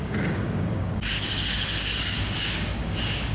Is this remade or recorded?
remade